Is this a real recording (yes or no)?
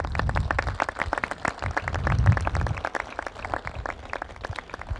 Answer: yes